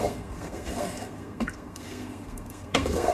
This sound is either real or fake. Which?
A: fake